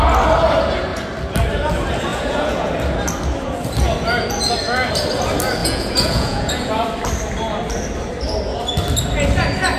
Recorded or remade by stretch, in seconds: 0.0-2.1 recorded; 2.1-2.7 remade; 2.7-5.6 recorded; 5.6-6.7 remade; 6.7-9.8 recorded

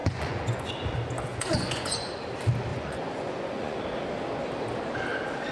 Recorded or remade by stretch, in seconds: 0.0-0.7 remade; 0.7-1.3 recorded; 1.3-2.1 remade; 2.1-2.7 recorded; 2.7-3.8 remade; 3.8-5.5 recorded

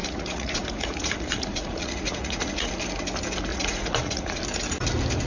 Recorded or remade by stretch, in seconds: 0.0-2.7 remade; 2.7-3.5 recorded; 3.5-4.4 remade; 4.4-5.3 recorded